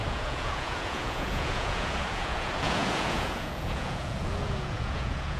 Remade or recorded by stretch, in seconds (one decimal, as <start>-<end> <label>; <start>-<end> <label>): 0.0-5.4 remade